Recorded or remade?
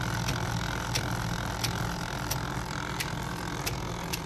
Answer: recorded